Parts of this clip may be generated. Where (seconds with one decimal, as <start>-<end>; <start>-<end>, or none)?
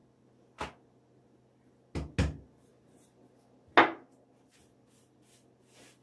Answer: none